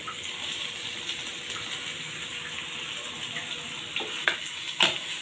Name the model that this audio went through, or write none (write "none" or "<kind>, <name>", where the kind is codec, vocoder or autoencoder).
none